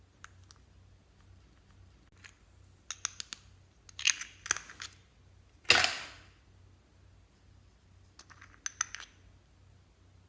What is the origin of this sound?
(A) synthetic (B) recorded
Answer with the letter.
B